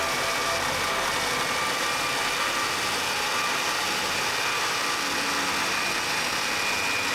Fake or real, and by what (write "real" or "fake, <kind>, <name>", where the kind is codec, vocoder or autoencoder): real